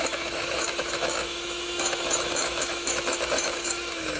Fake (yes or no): yes